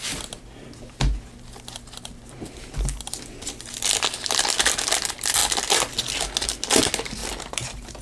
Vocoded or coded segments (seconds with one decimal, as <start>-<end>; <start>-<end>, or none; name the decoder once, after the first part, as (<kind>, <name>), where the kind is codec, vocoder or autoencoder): 7.2-8.0 (vocoder, BigVGAN v2)